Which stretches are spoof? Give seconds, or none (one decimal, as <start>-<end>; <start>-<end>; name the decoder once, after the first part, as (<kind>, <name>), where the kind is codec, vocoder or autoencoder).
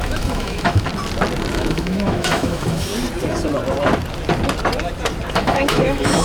0.0-0.9 (autoencoder, DAC-VAE); 1.5-2.9; 5.3-6.2